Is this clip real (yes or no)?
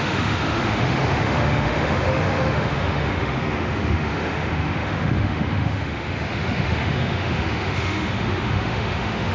no